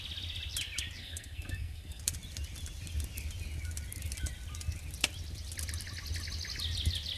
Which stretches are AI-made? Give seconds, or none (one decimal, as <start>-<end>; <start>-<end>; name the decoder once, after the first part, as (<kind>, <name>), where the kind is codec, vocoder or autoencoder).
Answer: 1.0-2.0 (codec, SNAC)

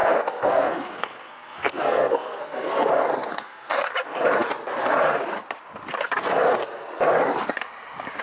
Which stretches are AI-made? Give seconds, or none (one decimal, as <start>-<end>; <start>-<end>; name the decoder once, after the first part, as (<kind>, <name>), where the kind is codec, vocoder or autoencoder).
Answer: 0.0-2.9 (codec, SNAC); 3.3-3.9

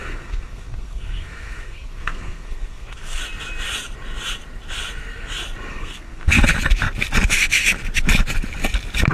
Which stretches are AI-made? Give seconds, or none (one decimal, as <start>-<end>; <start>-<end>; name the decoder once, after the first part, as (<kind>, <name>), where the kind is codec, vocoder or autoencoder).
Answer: 0.0-3.2 (codec, SNAC); 5.7-6.3

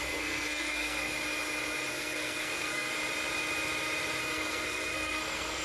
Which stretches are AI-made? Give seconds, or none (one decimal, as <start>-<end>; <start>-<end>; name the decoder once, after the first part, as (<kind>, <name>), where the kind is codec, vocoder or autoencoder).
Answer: 0.0-1.1 (codec, SNAC); 1.9-2.9; 4.2-5.6

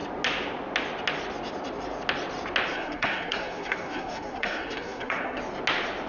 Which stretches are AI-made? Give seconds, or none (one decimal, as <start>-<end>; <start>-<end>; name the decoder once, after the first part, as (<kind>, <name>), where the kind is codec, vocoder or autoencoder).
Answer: 2.7-5.4 (codec, SNAC)

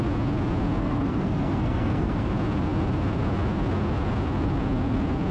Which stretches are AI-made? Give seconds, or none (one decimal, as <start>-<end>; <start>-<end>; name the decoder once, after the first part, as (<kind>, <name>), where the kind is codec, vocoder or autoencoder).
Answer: 0.8-2.3 (codec, SNAC)

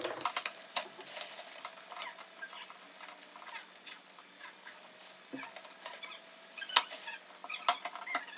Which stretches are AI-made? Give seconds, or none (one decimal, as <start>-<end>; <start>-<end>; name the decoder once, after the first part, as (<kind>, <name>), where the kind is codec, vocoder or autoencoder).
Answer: none